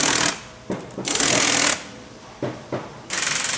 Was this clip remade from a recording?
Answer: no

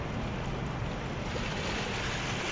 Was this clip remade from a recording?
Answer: no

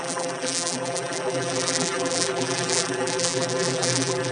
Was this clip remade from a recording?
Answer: yes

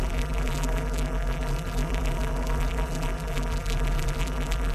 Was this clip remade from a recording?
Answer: yes